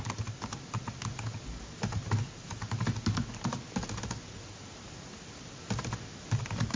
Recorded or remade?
recorded